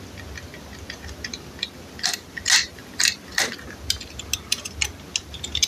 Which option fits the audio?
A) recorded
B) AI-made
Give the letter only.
A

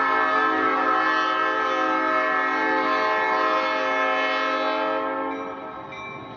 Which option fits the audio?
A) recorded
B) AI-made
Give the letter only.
A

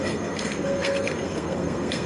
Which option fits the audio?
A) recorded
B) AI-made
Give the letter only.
B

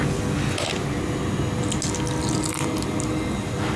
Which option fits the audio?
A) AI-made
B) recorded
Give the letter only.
B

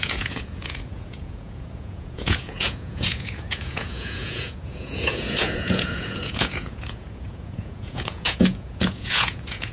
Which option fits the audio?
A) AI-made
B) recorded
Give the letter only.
A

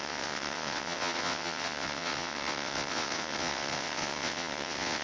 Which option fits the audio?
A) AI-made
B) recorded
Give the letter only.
A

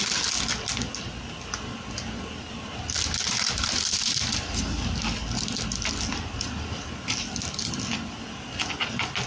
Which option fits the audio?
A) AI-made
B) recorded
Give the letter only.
B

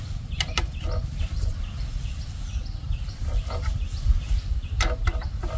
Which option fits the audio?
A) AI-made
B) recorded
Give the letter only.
B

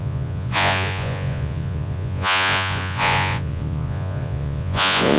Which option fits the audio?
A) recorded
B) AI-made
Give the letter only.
B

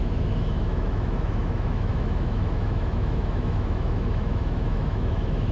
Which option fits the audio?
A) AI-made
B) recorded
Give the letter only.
A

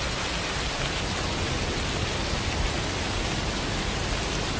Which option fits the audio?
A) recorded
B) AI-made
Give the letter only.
A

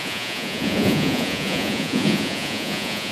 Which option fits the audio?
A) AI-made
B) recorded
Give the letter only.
A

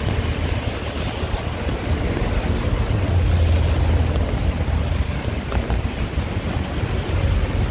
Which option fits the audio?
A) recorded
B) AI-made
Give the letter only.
A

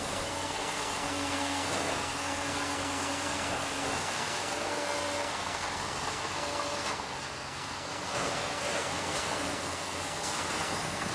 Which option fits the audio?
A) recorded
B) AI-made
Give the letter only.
B